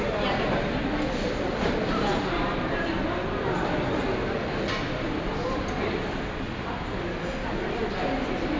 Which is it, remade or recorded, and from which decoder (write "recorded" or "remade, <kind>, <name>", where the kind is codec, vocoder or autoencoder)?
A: recorded